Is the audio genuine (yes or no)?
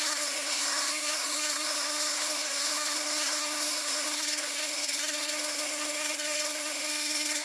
no